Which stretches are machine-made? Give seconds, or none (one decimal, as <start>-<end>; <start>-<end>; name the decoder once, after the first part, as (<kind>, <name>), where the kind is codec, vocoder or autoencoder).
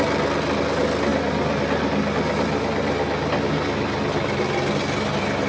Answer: none